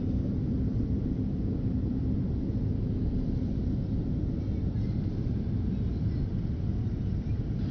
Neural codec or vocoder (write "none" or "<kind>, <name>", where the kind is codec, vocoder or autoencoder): vocoder, BigVGAN v2